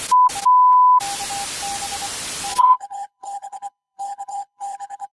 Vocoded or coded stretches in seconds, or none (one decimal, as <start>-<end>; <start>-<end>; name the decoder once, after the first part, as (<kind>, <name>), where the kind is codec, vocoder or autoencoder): 2.5-5.1 (codec, HILCodec)